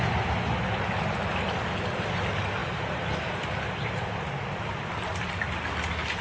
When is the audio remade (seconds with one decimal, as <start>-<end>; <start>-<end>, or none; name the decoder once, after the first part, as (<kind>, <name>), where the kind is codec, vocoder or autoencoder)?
2.6-3.2 (vocoder, BigVGAN v2)